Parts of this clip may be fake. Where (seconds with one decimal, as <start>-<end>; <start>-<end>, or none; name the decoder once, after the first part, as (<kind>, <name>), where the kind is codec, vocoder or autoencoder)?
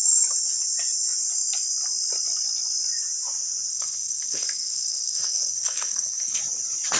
3.7-6.4 (codec, SNAC)